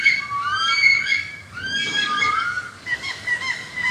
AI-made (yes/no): yes